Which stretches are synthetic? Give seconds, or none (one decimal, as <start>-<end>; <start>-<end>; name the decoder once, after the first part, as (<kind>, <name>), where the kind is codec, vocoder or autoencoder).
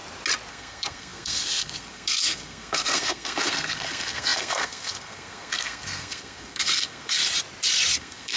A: 0.5-7.2 (codec, SNAC); 8.0-8.4